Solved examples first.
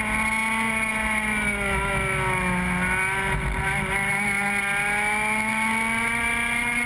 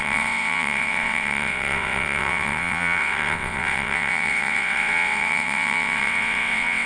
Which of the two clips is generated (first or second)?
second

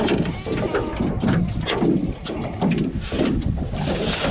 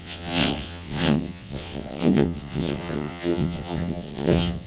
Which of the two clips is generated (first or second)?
second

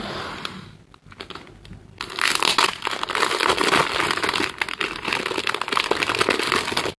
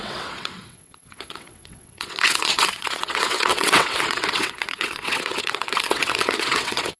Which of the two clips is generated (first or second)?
second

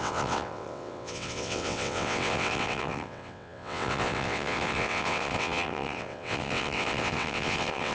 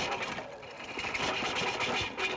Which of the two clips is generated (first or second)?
first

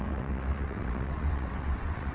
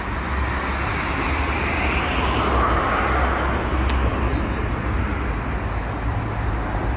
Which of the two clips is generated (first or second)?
first